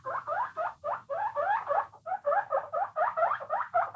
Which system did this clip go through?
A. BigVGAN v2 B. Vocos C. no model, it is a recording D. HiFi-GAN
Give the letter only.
C